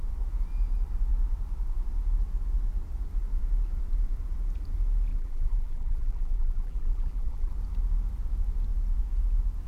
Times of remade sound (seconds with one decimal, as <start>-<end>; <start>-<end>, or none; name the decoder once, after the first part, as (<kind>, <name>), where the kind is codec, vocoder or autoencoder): 5.1-7.5 (vocoder, BigVGAN v2)